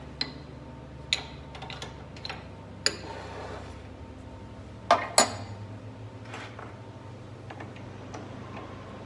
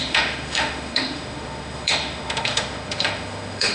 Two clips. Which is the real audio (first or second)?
first